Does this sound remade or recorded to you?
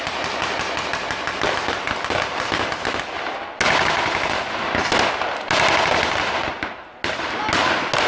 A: recorded